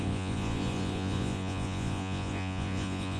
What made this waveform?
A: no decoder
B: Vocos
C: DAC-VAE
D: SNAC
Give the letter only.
B